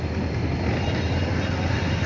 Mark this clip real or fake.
real